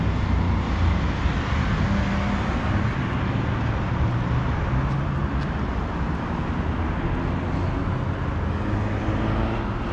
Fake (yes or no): no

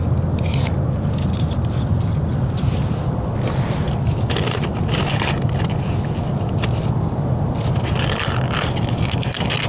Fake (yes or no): no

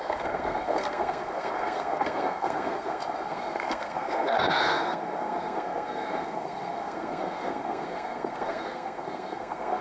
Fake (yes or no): yes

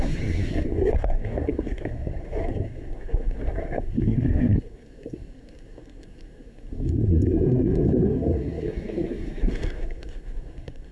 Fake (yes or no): yes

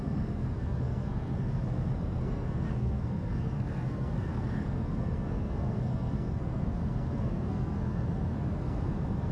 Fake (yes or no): yes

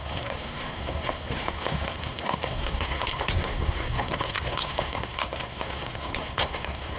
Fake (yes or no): yes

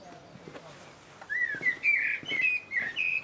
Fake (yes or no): no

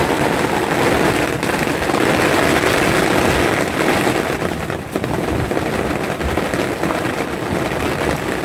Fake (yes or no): no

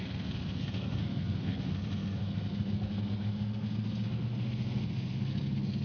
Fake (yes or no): yes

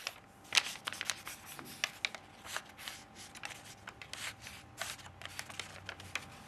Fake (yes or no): no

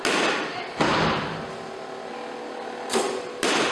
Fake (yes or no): no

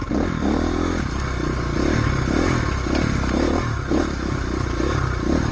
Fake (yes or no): no